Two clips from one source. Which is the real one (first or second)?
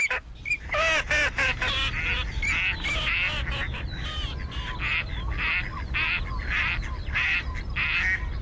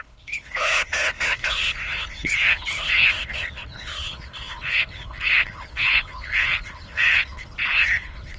first